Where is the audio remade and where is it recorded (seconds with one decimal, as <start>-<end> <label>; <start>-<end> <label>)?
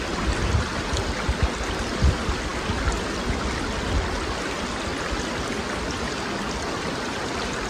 0.0-7.7 recorded